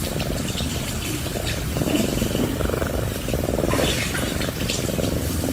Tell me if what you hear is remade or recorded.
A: remade